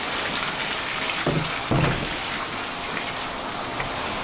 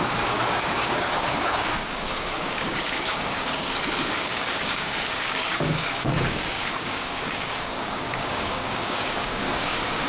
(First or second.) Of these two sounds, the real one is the first